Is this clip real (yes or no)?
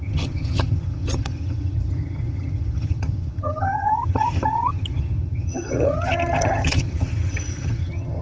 no